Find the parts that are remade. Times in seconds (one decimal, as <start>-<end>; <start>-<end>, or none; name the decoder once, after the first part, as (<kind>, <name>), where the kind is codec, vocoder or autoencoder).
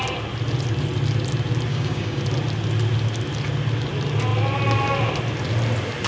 1.7-2.2 (codec, DAC)